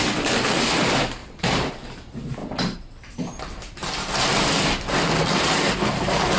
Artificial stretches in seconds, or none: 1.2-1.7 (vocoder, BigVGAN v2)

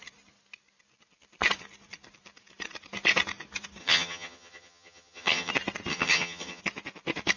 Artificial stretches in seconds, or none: 3.8-5.5 (vocoder, HiFi-GAN); 5.9-6.6

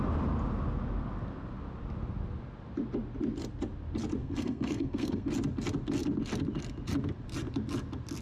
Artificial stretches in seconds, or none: 4.2-5.3 (codec, SNAC)